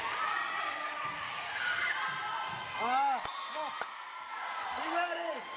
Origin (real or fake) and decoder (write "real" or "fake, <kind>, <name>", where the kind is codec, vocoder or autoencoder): real